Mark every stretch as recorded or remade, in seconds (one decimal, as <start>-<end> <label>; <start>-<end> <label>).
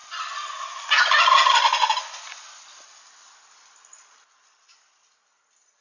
0.0-5.8 recorded